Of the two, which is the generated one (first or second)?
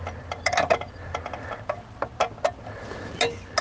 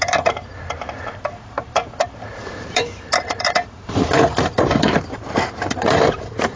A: second